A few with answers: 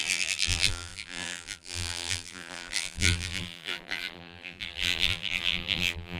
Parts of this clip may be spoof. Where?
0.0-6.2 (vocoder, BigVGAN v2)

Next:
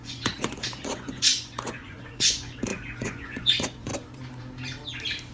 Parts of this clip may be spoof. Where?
0.0-3.9 (vocoder, Vocos)

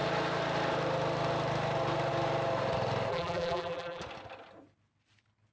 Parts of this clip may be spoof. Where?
3.1-4.0 (vocoder, BigVGAN v2)